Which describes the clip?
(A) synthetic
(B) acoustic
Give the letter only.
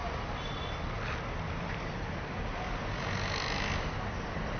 B